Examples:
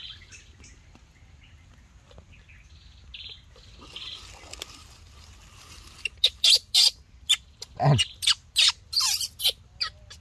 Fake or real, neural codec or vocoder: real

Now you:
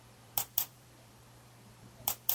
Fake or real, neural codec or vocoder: fake, vocoder, BigVGAN v2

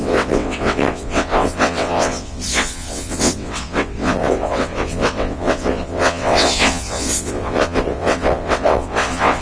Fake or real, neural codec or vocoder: fake, vocoder, WaveNeXt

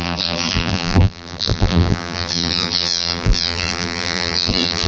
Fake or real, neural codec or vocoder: fake, vocoder, BigVGAN v2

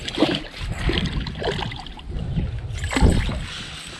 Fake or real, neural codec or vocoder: real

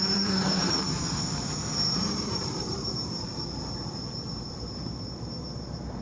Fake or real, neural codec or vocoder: fake, vocoder, BigVGAN v2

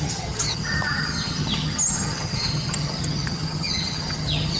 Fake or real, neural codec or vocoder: fake, vocoder, HiFi-GAN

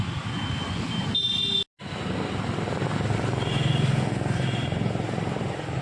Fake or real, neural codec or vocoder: real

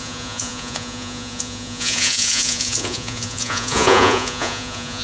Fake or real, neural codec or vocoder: fake, vocoder, Vocos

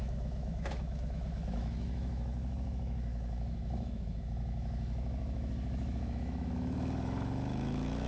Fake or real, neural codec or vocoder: fake, autoencoder, DAC-VAE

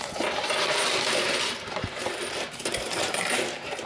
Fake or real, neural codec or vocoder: fake, vocoder, BigVGAN v2